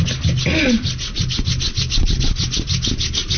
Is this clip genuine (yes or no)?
yes